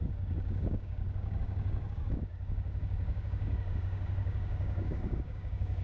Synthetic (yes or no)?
yes